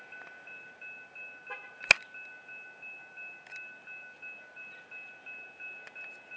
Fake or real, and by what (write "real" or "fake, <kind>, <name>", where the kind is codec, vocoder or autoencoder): real